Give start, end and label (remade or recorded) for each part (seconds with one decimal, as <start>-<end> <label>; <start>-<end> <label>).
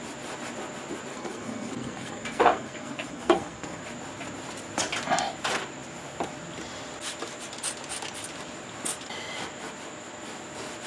0.0-1.1 recorded; 1.1-3.8 remade; 3.8-10.9 recorded